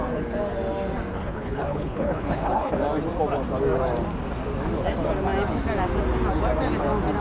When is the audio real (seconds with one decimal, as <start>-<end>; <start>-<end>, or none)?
0.0-1.1; 2.8-7.2